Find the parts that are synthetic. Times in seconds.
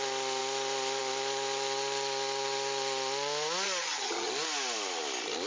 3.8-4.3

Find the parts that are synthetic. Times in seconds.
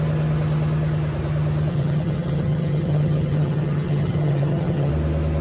1.7-4.9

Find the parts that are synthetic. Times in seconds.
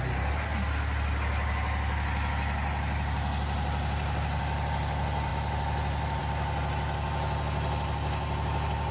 none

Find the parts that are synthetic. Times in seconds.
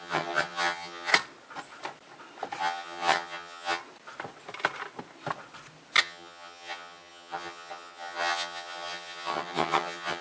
0.0-1.1; 2.6-3.8; 6.0-10.2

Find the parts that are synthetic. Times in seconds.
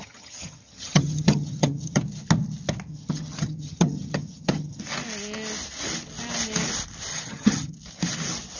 0.0-2.0; 2.9-4.8; 7.1-7.7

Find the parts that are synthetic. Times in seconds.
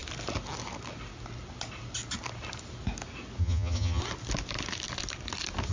3.4-4.0